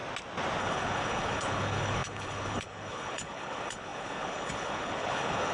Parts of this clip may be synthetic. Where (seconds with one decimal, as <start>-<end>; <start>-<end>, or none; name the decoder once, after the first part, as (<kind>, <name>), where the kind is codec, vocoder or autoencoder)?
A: 0.6-5.5 (codec, HILCodec)